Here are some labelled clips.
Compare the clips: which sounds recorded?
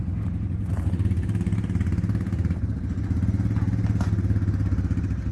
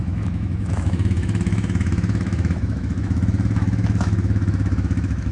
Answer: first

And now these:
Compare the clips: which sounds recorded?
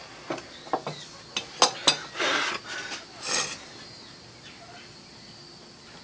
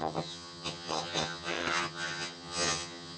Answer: first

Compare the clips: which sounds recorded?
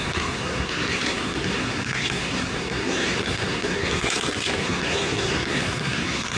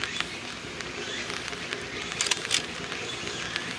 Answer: second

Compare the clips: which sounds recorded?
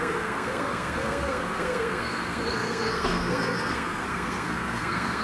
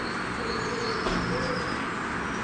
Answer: second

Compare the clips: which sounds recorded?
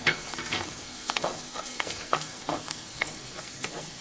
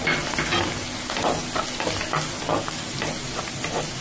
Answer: second